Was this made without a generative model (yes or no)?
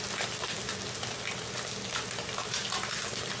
yes